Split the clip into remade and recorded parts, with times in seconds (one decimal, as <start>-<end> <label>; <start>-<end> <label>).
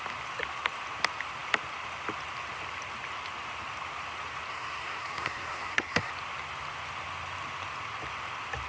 0.0-4.5 recorded; 4.5-6.1 remade; 6.1-8.7 recorded